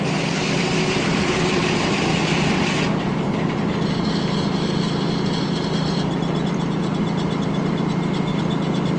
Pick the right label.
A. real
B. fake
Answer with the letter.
B